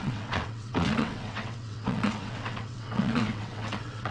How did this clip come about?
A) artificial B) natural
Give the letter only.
A